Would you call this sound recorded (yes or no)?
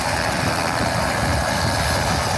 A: yes